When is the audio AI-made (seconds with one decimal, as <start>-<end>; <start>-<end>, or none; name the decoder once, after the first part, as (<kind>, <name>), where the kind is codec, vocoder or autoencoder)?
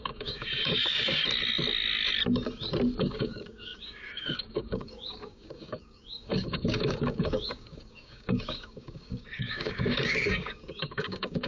0.0-1.2 (codec, DAC); 3.0-11.5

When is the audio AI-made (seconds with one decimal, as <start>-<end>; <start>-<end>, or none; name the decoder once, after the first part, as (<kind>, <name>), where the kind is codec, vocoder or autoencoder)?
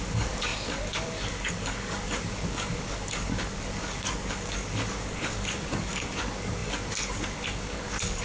0.0-8.2 (codec, DAC)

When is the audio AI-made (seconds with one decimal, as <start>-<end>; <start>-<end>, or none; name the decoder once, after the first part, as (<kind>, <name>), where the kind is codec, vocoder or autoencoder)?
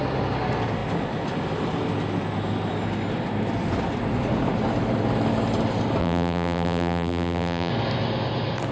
6.0-7.7 (vocoder, BigVGAN v2)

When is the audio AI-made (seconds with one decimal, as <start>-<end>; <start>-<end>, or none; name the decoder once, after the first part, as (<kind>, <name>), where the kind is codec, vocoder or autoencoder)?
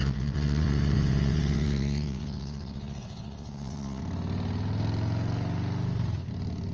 0.0-4.0 (vocoder, WaveNeXt)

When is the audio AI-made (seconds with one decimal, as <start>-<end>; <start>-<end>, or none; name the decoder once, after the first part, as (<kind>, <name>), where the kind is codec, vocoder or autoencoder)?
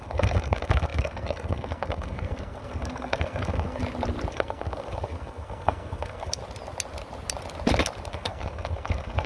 0.0-3.8 (codec, SNAC); 4.3-6.4; 8.1-9.3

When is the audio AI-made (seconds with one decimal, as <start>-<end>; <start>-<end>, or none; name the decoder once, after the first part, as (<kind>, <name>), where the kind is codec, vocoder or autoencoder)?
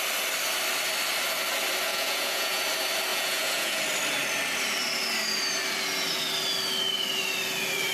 1.9-2.6 (vocoder, Vocos); 3.1-3.8